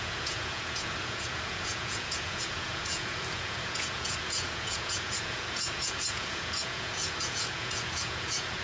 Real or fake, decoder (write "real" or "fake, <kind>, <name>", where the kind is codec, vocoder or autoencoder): fake, vocoder, Vocos